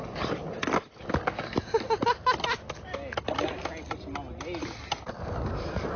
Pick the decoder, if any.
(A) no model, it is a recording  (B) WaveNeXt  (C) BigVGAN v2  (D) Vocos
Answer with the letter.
A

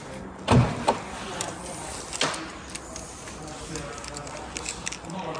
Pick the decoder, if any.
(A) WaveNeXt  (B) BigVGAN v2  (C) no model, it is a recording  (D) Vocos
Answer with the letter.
C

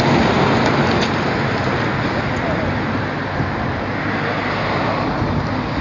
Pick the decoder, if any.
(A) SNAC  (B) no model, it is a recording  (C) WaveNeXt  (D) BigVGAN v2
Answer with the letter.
B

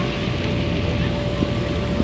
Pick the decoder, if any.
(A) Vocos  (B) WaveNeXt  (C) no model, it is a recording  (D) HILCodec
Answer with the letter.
C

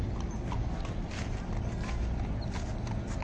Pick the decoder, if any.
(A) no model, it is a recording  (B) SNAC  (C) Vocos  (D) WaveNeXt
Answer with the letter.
A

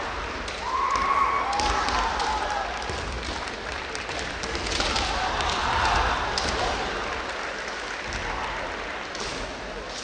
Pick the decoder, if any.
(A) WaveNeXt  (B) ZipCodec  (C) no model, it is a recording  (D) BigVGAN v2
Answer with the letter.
C